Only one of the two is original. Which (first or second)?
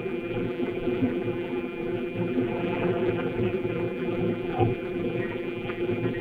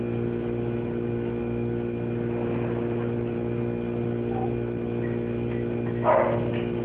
second